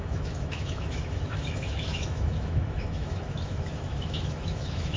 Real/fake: fake